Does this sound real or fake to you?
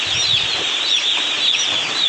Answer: real